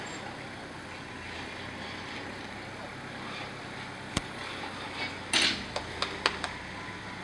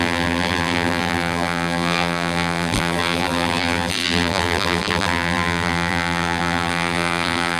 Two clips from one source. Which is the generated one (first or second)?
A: second